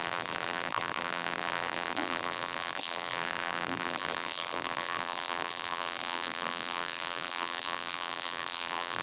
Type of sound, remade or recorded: remade